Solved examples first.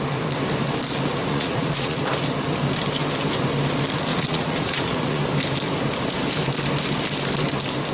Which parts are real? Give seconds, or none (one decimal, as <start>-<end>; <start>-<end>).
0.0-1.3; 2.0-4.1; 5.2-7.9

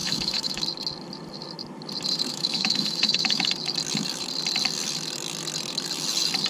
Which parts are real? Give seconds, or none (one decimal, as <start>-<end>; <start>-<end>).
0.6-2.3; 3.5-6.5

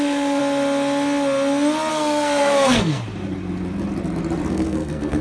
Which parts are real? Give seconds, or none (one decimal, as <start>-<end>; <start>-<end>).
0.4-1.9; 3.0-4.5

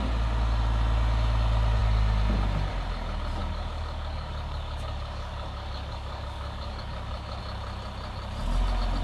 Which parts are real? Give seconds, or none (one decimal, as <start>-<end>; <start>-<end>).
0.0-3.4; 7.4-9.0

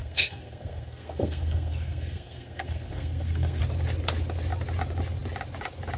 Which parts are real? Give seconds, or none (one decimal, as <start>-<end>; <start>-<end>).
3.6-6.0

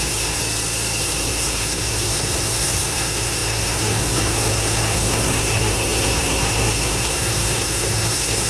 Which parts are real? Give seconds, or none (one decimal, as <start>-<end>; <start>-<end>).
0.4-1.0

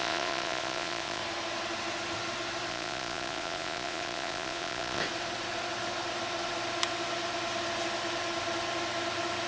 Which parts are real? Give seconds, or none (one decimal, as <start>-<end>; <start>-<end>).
1.2-2.7; 5.0-9.5

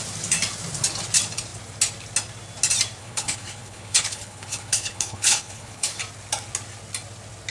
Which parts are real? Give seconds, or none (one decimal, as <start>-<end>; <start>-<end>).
0.0-3.0; 6.0-7.5